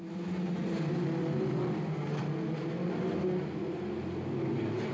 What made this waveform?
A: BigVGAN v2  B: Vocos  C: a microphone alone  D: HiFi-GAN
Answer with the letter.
C